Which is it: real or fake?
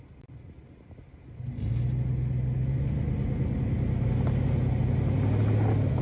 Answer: real